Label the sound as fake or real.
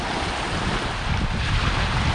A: real